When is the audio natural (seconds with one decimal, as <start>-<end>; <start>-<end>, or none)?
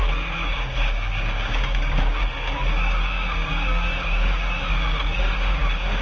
none